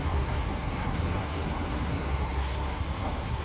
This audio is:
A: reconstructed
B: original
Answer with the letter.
A